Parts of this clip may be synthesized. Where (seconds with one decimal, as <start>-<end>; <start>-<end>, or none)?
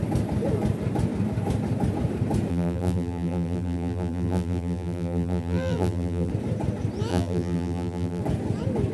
2.5-6.3; 7.1-8.2